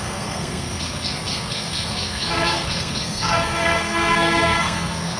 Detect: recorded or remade remade